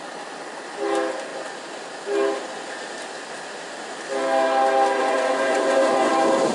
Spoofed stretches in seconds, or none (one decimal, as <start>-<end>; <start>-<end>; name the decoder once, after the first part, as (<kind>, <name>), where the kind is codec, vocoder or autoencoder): 5.0-6.1 (vocoder, Vocos)